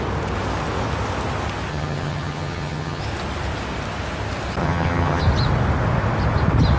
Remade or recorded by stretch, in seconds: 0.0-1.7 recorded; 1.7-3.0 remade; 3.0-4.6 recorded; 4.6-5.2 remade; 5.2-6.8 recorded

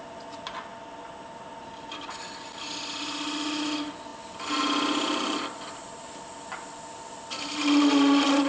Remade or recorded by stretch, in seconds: 0.0-8.5 recorded

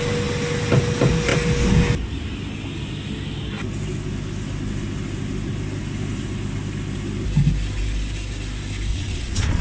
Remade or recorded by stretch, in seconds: 0.0-8.9 recorded; 8.9-9.6 remade

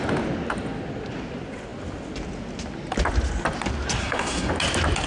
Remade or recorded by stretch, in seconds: 0.0-4.0 recorded; 4.0-4.5 remade; 4.5-5.1 recorded